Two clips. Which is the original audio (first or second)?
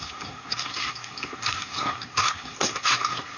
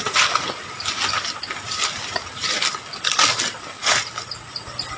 second